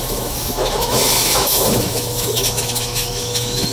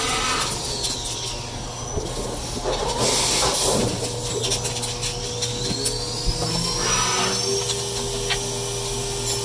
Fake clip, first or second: first